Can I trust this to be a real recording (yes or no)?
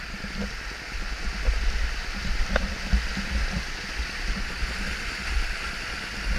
yes